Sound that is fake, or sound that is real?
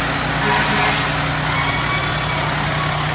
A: real